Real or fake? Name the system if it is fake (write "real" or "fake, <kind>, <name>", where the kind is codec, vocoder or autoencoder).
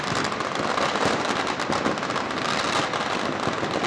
real